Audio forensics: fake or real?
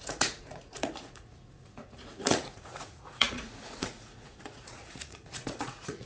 fake